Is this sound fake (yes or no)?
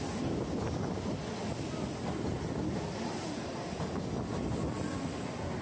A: no